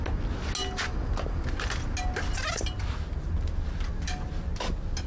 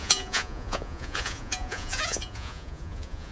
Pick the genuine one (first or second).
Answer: first